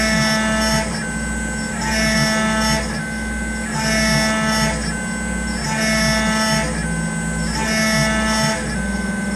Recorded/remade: recorded